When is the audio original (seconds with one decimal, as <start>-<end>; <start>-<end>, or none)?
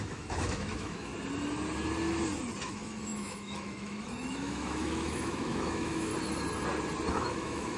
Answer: 1.1-2.7; 6.1-7.1